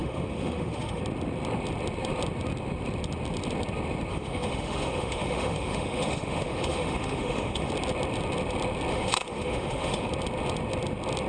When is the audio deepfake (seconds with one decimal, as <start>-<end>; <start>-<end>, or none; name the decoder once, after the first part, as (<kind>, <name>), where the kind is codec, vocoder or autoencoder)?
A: 0.0-1.0 (autoencoder, DAC-VAE); 4.1-7.7; 8.9-10.1